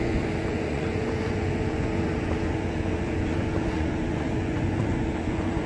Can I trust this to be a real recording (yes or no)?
no